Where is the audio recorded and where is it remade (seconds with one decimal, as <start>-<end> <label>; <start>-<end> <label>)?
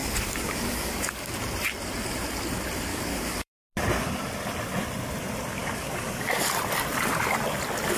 0.0-1.3 remade; 1.3-2.9 recorded; 2.9-3.5 remade; 3.5-5.6 recorded; 5.6-6.3 remade; 6.3-8.0 recorded